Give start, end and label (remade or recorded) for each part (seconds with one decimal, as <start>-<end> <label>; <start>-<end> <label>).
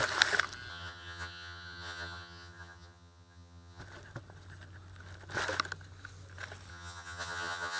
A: 0.0-0.7 recorded; 0.7-3.8 remade; 3.8-6.7 recorded; 6.7-7.8 remade